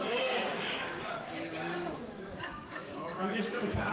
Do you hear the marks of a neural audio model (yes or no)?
yes